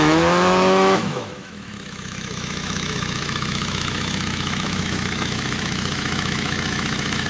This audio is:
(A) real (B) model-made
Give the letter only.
B